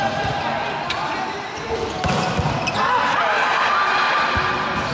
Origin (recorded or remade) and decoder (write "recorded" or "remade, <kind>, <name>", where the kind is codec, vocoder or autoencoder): recorded